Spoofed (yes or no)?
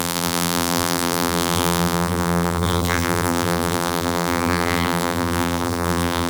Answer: yes